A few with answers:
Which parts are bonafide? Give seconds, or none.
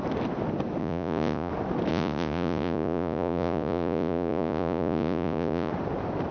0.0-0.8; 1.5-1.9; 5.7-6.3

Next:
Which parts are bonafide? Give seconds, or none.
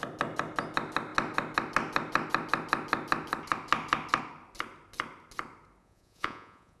0.0-5.8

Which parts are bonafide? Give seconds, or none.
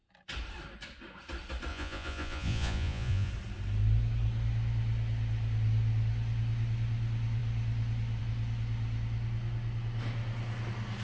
0.0-1.7; 3.3-11.0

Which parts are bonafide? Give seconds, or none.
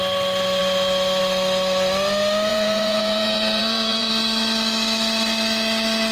0.0-2.5; 4.1-6.1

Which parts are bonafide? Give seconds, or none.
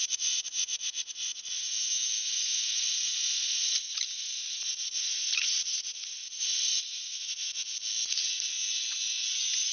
1.6-2.8; 7.6-9.7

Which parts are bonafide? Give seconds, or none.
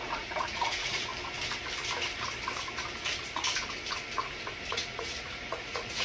1.1-4.7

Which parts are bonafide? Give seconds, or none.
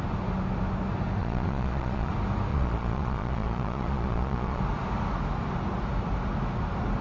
0.0-1.2; 2.1-2.5; 4.6-7.0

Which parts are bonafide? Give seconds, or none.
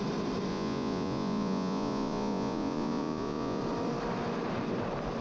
0.0-0.5; 3.6-5.2